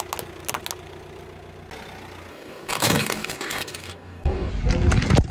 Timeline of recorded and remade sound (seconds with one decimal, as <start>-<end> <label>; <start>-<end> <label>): 0.0-2.3 recorded; 2.3-4.5 remade; 4.5-5.3 recorded